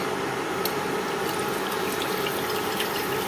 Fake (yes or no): no